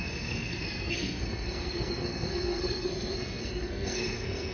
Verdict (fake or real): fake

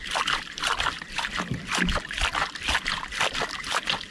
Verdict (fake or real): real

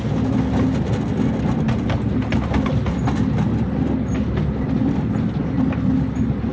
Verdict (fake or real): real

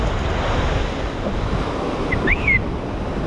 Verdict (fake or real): real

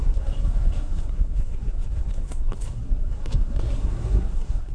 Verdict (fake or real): fake